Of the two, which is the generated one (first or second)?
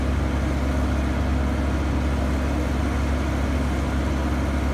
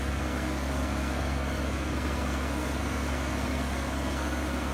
second